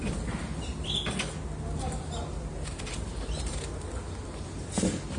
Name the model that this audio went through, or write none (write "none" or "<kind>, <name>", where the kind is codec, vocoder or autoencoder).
none